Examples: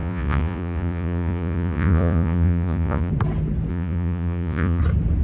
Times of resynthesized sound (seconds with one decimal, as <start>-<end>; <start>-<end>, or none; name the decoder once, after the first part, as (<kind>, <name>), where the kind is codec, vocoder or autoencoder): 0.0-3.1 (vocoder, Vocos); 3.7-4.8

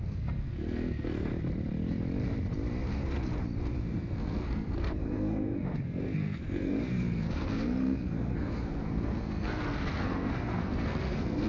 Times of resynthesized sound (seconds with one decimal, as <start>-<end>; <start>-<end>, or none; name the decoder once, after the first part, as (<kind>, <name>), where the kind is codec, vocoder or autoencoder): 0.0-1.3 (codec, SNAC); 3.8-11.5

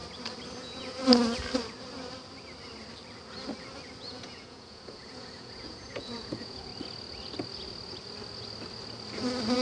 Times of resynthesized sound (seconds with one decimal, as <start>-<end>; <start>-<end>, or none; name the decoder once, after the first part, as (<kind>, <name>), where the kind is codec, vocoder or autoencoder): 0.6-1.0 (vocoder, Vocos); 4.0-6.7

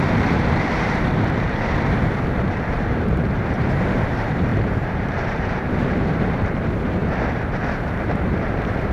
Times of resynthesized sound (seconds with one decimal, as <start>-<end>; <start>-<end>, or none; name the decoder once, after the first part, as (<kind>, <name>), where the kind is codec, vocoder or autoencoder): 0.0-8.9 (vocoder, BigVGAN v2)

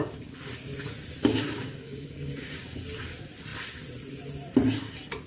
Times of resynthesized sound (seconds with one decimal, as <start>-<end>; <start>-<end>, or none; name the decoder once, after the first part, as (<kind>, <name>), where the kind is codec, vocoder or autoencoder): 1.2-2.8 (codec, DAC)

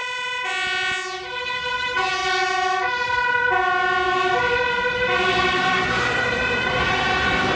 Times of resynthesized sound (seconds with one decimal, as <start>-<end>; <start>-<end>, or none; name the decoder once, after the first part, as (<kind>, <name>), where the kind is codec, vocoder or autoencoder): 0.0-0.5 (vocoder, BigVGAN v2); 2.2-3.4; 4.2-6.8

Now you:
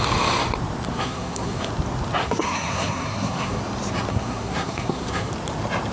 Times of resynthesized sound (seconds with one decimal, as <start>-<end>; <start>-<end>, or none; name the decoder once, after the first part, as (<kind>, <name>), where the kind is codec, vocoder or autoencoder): 0.9-1.7 (codec, SNAC); 2.2-3.6; 4.1-5.3